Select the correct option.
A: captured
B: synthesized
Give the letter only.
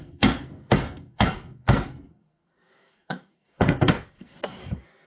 B